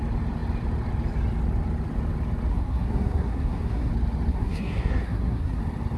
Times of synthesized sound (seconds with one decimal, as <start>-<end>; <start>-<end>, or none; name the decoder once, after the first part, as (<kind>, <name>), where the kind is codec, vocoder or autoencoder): 2.5-3.9 (codec, SNAC); 4.3-5.6